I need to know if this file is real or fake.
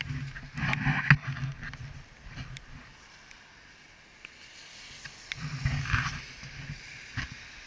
real